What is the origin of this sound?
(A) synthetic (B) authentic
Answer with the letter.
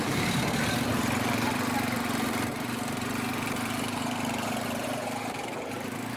A